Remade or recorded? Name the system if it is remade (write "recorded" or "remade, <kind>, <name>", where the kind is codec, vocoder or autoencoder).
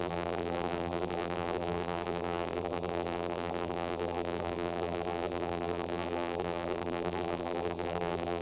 remade, vocoder, BigVGAN v2